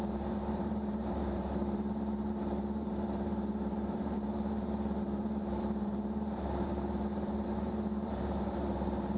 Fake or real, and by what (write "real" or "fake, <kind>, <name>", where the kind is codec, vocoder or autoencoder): fake, vocoder, BigVGAN v2